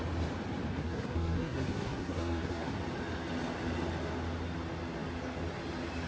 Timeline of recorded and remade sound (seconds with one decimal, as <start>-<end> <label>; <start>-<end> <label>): 0.0-0.7 recorded; 0.7-2.8 remade; 2.8-6.1 recorded